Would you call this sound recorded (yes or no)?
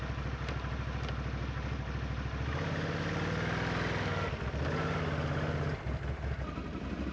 yes